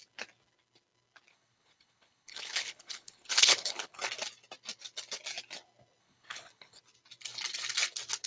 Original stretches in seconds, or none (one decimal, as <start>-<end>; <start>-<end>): 0.0-1.3; 4.0-6.0; 6.8-8.3